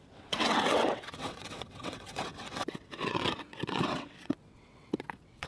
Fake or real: fake